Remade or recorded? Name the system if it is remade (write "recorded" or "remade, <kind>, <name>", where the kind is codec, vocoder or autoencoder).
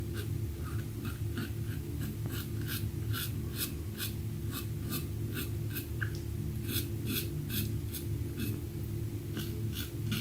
recorded